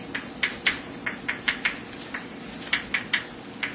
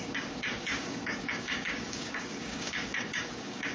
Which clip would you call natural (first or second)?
first